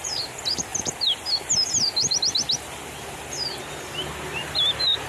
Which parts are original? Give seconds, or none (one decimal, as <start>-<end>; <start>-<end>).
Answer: 0.0-5.1